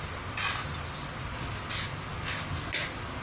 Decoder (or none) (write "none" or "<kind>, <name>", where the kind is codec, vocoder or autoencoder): none